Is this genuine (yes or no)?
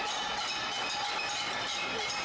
yes